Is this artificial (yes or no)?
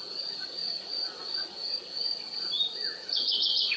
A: yes